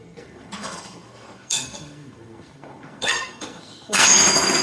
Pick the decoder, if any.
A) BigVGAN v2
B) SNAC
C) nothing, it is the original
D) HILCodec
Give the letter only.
B